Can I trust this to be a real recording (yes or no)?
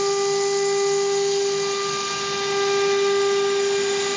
yes